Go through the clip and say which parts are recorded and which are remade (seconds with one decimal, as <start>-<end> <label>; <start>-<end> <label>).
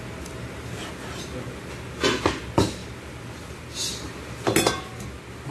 0.0-5.5 recorded